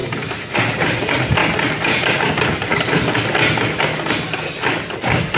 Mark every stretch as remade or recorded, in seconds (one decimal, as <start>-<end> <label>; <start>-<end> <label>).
0.0-0.5 recorded; 0.5-1.4 remade; 1.4-2.2 recorded; 2.2-2.7 remade; 2.7-5.4 recorded